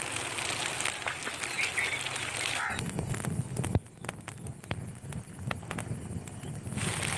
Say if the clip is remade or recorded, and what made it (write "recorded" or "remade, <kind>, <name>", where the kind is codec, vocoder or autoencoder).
recorded